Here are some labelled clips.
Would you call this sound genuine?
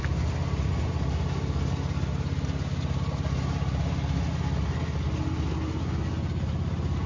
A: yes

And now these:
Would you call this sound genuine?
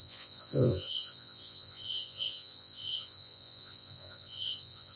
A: no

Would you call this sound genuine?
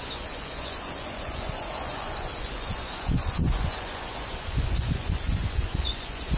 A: no